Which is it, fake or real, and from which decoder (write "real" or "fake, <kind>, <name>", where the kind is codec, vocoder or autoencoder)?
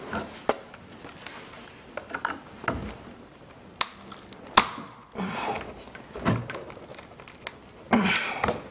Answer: real